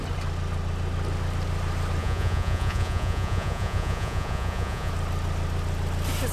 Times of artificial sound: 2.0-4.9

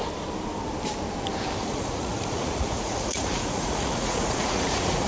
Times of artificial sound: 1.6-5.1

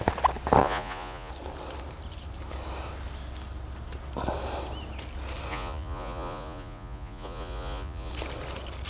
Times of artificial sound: 0.6-1.3; 5.5-8.1